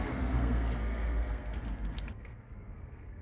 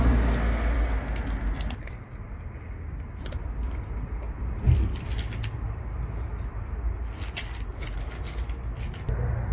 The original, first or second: second